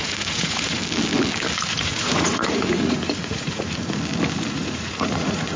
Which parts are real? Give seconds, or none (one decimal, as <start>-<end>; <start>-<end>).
0.8-1.6; 3.8-4.5